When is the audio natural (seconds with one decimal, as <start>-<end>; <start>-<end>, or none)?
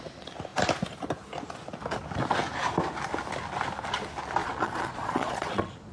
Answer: 0.0-4.4